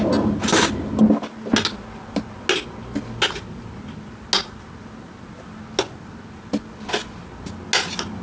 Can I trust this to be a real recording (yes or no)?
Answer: yes